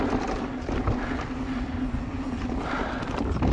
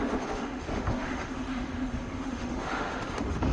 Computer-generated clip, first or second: second